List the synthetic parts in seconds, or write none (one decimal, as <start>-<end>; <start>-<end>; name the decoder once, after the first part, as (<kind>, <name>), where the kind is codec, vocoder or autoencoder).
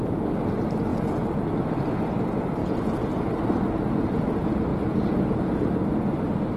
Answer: 0.9-1.5 (vocoder, Vocos); 2.6-3.3; 4.7-5.7